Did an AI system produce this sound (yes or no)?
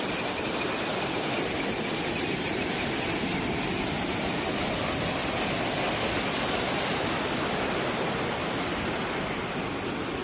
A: no